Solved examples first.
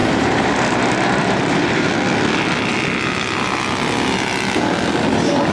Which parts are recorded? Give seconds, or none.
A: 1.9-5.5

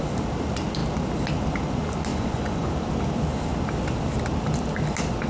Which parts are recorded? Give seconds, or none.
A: 0.0-2.1; 2.7-5.3

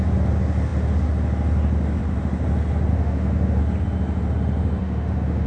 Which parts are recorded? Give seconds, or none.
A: 0.0-2.9; 3.6-4.8

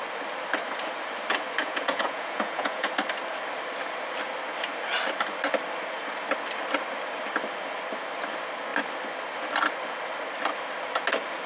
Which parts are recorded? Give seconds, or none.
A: 0.0-1.6; 2.9-11.5

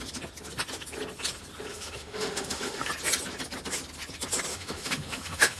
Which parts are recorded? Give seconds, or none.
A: 0.0-1.7; 2.9-4.5

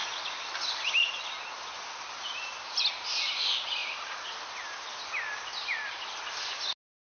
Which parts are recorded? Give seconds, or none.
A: 0.0-7.1

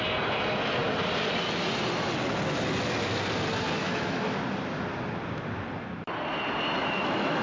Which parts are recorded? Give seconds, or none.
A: 0.0-3.8; 4.3-6.8

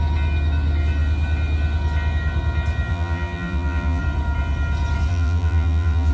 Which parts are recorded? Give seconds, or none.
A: 0.0-2.9; 4.0-5.1